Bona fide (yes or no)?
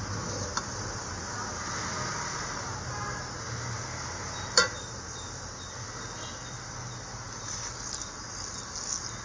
yes